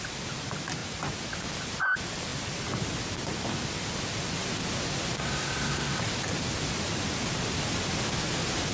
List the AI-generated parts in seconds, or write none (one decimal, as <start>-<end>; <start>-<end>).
5.2-6.0